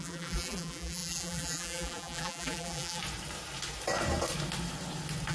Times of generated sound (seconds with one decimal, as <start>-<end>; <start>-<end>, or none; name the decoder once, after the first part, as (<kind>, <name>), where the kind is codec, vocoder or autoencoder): 0.0-3.0 (vocoder, BigVGAN v2)